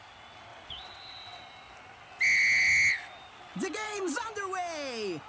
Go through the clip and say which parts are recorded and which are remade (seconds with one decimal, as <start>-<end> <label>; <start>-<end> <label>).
0.0-0.5 recorded; 0.5-1.4 remade; 1.4-3.5 recorded; 3.5-4.3 remade; 4.3-5.3 recorded

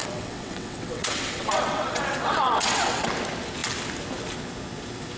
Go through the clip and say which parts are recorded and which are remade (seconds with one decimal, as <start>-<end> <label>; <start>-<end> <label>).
0.0-3.1 remade; 3.1-5.2 recorded

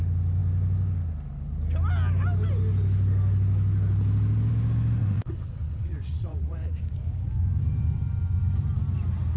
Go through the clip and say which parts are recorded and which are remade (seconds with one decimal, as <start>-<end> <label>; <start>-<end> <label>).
0.0-5.0 recorded; 5.0-6.8 remade; 6.8-9.4 recorded

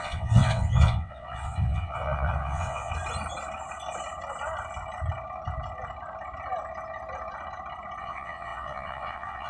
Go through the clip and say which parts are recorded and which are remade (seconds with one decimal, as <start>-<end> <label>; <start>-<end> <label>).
0.0-2.9 remade; 2.9-8.0 recorded; 8.0-9.5 remade

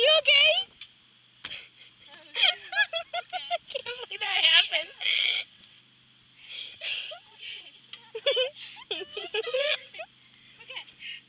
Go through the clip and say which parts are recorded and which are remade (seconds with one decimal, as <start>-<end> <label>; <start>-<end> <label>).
0.0-3.8 recorded; 3.8-5.8 remade; 5.8-6.7 recorded; 6.7-7.8 remade; 7.8-9.1 recorded; 9.1-10.0 remade; 10.0-11.3 recorded

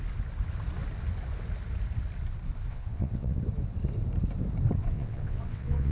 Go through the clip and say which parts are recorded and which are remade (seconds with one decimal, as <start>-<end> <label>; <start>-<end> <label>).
0.0-2.7 recorded; 2.7-3.4 remade; 3.4-4.8 recorded; 4.8-5.9 remade